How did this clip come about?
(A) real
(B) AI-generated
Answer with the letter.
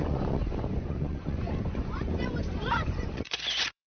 B